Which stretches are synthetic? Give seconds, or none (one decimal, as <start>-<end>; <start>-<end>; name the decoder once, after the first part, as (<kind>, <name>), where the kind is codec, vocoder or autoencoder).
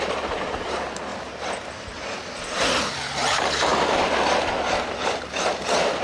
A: 1.1-2.4 (vocoder, BigVGAN v2); 3.7-6.0